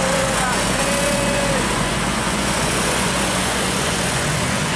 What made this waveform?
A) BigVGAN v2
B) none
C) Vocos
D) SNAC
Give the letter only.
C